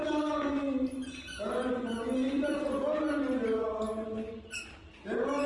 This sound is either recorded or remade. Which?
recorded